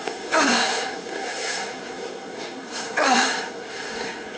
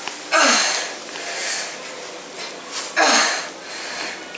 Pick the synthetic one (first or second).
first